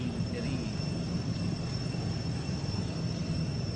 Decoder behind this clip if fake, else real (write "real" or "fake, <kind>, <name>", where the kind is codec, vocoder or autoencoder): real